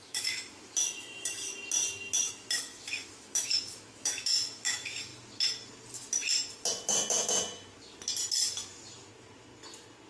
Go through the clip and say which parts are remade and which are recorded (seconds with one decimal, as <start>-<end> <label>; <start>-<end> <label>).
0.0-1.5 remade; 1.5-2.3 recorded; 2.3-5.1 remade; 5.1-10.1 recorded